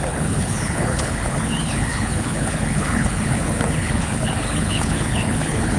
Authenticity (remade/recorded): remade